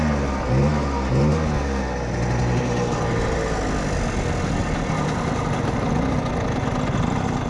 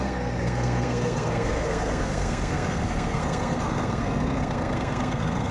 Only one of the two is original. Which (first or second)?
first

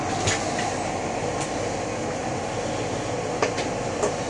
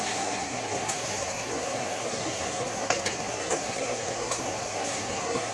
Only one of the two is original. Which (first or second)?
first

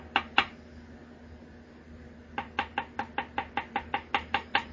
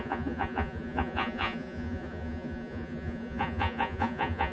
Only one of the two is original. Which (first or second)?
first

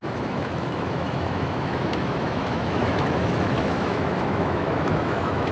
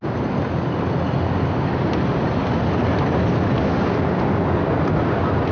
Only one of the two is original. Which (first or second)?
second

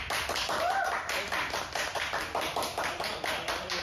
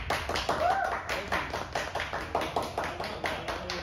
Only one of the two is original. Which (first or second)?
second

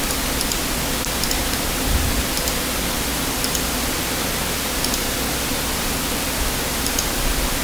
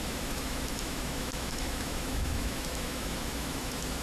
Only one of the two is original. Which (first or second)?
first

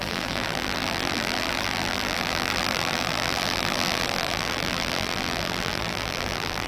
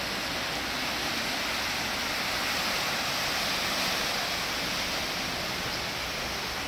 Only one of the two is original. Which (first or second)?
second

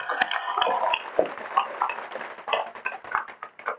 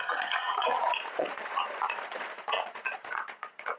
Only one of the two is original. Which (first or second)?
first